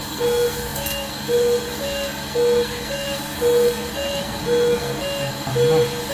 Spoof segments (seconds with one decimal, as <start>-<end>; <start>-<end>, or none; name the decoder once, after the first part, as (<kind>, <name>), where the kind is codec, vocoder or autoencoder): 0.0-5.5 (codec, SNAC)